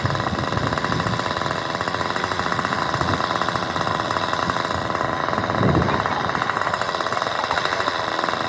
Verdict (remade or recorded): recorded